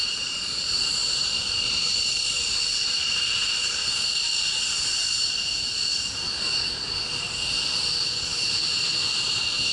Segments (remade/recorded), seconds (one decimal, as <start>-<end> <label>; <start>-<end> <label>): 0.0-4.5 remade; 4.5-9.7 recorded